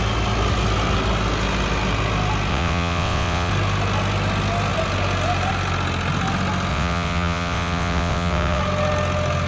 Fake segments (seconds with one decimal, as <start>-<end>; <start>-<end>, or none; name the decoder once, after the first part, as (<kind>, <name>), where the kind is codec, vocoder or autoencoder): 2.5-3.5 (vocoder, WaveNeXt); 6.7-8.6